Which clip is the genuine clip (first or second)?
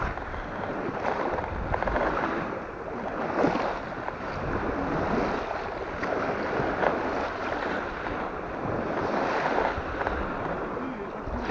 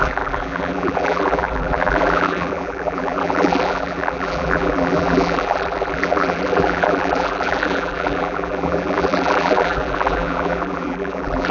first